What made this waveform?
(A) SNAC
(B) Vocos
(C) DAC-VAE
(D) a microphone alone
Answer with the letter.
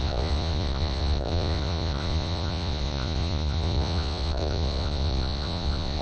B